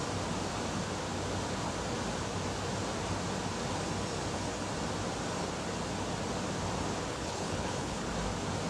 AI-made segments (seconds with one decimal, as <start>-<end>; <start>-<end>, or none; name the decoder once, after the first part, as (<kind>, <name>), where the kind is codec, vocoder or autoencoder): 7.1-8.1 (codec, HILCodec)